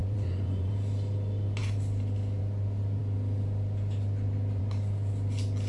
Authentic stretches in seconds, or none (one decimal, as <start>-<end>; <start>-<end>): 0.7-5.7